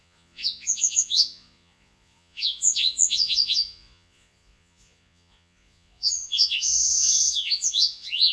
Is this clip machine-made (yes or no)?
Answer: yes